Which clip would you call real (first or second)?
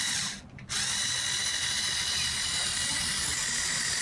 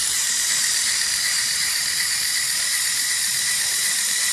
first